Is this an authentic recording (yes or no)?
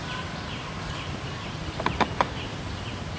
yes